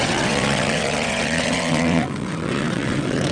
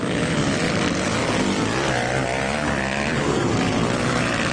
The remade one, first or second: first